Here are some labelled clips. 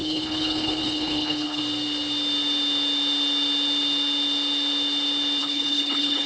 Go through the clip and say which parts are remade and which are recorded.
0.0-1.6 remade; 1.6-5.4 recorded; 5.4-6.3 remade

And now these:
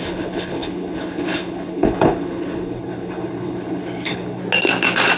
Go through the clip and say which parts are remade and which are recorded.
0.0-4.4 remade; 4.4-5.2 recorded

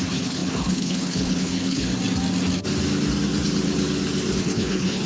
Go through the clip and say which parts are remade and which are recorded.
0.0-1.9 remade; 1.9-4.3 recorded; 4.3-5.1 remade

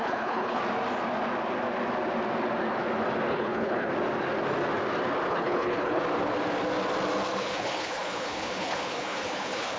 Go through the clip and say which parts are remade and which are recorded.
0.0-0.6 remade; 0.6-3.3 recorded; 3.3-3.9 remade; 3.9-5.3 recorded; 5.3-6.0 remade; 6.0-7.4 recorded; 7.4-9.8 remade

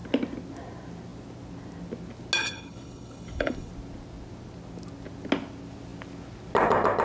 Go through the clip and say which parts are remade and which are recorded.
0.0-2.4 recorded; 2.4-3.7 remade; 3.7-7.0 recorded

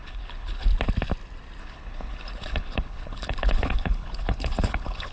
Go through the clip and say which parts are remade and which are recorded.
0.0-0.7 remade; 0.7-1.6 recorded; 1.6-5.1 remade